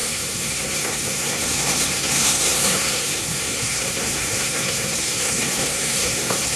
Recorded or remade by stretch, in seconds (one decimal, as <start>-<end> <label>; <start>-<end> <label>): 0.0-6.6 remade